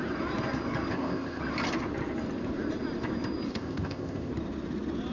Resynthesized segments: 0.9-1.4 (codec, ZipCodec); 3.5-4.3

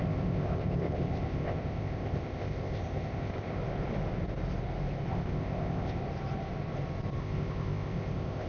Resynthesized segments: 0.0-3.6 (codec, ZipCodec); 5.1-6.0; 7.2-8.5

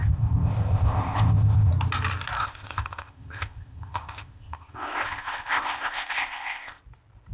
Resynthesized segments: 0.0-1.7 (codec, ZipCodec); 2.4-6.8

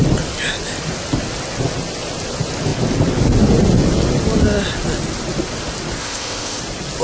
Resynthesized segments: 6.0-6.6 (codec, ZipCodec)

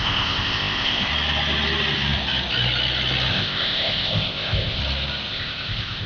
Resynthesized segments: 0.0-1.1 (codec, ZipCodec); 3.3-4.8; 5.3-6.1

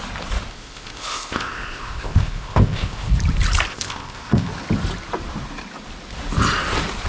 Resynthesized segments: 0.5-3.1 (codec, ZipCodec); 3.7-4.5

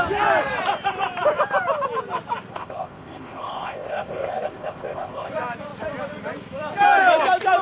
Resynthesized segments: 2.5-5.3 (codec, ZipCodec)

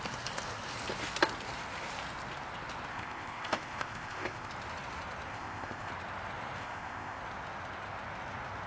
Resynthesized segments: 2.9-4.5 (codec, ZipCodec); 5.3-5.9; 6.6-7.2